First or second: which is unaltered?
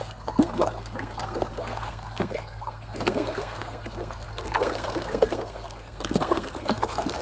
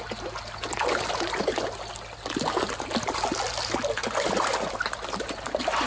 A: second